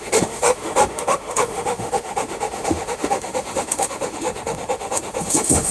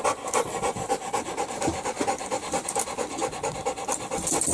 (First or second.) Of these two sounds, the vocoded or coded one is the first